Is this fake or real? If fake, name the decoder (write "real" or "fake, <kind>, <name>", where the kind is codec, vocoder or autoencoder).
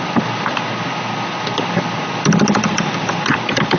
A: real